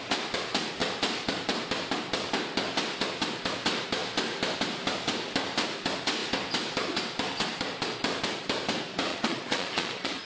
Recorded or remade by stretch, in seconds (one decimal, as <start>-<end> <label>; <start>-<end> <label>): 0.0-9.1 recorded; 9.1-10.2 remade